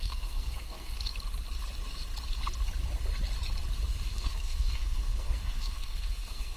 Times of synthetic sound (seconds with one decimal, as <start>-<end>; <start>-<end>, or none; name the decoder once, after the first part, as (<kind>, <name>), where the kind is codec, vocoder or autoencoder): 0.0-1.1 (codec, SNAC); 4.1-6.6